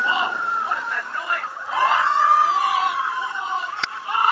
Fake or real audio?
fake